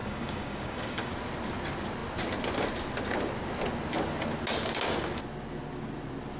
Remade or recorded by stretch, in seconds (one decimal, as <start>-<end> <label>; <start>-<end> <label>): 0.0-1.1 remade; 1.1-6.4 recorded